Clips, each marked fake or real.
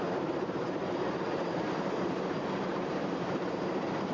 fake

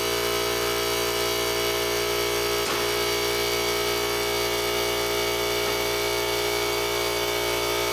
real